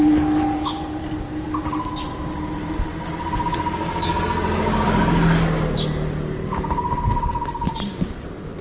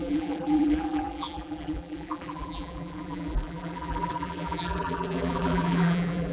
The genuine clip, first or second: first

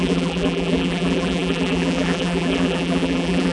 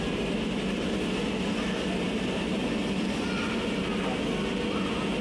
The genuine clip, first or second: second